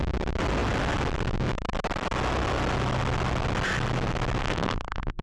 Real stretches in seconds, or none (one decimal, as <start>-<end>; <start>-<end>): 0.0-4.4